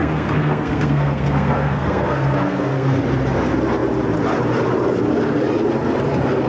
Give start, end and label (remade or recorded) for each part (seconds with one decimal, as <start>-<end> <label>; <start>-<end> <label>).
0.0-3.0 remade; 3.0-6.5 recorded